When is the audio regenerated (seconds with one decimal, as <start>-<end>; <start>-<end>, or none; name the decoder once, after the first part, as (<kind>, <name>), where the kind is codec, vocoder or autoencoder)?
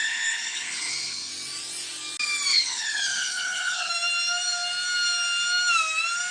0.0-1.3 (codec, HILCodec); 2.5-3.9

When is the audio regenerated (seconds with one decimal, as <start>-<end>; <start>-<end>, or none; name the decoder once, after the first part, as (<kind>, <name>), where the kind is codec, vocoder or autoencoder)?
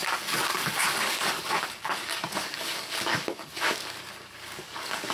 0.0-5.1 (codec, DAC)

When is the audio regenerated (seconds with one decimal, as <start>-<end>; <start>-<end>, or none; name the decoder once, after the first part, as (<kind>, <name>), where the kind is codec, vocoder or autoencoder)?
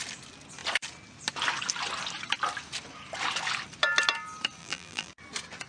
4.6-5.1 (vocoder, BigVGAN v2)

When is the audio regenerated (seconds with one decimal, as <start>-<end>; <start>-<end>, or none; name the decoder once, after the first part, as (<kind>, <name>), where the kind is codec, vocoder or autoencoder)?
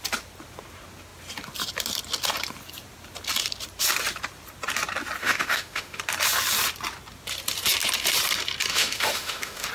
5.2-6.0 (autoencoder, DAC-VAE); 8.7-9.7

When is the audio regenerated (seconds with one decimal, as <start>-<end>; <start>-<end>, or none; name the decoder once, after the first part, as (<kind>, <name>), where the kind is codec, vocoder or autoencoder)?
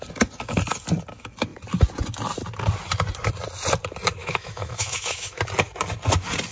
4.2-5.4 (autoencoder, DAC-VAE)